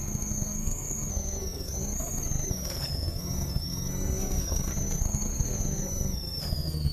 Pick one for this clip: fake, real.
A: fake